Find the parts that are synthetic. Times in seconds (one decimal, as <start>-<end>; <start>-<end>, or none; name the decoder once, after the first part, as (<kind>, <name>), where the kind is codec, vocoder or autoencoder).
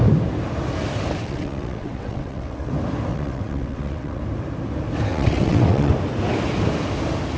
1.2-2.7 (vocoder, WaveNeXt); 3.1-4.2; 5.1-5.9